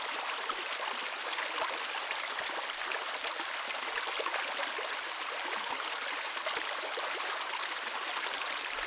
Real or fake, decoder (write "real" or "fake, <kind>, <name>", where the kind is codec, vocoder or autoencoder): real